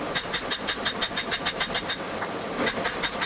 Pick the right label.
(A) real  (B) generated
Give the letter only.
A